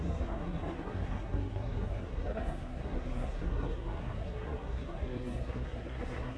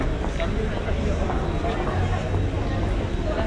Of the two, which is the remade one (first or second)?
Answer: first